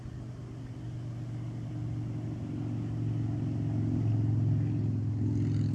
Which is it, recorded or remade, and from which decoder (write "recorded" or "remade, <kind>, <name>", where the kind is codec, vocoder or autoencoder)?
recorded